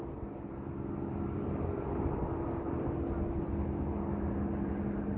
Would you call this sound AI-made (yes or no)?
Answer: no